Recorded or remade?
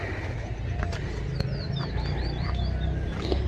recorded